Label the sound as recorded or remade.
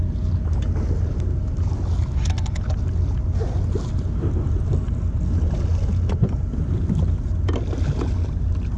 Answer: recorded